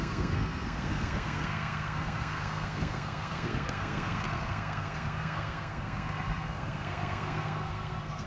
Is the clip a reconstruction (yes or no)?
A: yes